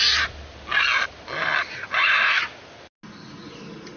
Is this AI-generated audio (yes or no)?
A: no